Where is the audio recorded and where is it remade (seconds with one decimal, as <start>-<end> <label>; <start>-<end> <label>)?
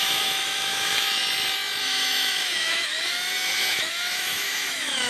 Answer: 0.0-1.2 remade; 1.2-1.8 recorded; 1.8-5.1 remade